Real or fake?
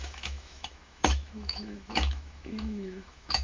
fake